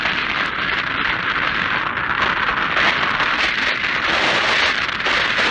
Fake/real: fake